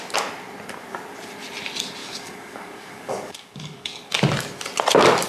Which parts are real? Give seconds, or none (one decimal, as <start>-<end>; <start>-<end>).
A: 0.0-2.0; 4.1-5.3